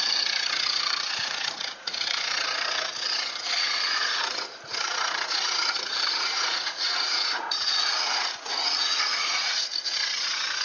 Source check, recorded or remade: remade